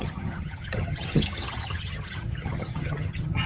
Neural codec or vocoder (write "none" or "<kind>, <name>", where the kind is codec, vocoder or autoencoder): vocoder, HiFi-GAN